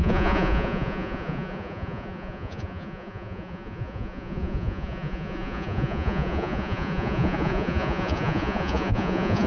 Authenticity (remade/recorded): remade